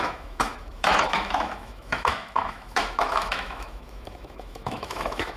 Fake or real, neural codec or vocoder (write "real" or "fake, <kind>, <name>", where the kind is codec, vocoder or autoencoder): fake, autoencoder, DAC-VAE